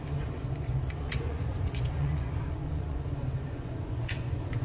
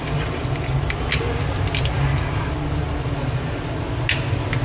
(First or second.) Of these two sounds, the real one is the second